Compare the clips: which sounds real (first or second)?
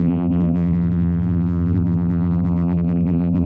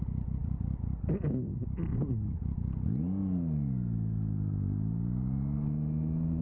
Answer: second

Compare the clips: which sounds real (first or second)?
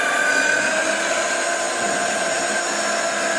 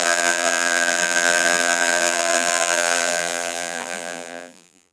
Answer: first